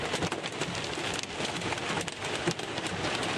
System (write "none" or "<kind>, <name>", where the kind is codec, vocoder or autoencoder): none